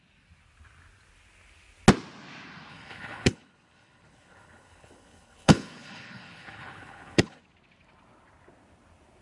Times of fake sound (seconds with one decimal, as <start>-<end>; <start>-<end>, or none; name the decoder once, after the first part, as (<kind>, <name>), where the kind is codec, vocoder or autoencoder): 2.7-7.4 (codec, HILCodec)